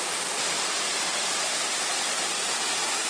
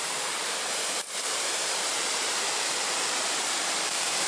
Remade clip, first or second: second